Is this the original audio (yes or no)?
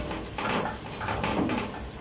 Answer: yes